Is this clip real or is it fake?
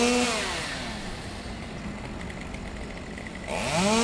real